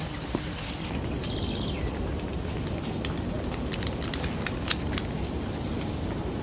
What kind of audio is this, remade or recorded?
recorded